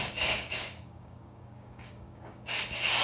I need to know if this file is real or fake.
fake